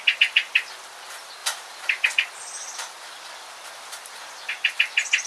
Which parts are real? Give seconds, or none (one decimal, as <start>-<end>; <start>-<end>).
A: 0.0-5.3

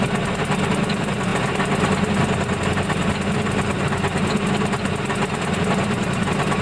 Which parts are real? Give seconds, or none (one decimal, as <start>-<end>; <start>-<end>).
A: 0.0-6.6

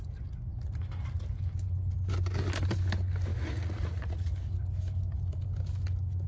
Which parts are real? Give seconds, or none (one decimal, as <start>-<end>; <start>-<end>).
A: 0.0-3.3; 4.3-6.3

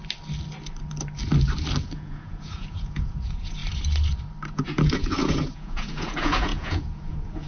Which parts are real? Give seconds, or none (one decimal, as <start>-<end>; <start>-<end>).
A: 0.0-1.8; 3.6-4.5